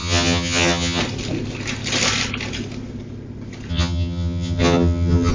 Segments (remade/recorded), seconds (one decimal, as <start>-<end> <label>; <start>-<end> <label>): 0.0-1.0 remade; 1.0-3.7 recorded; 3.7-5.3 remade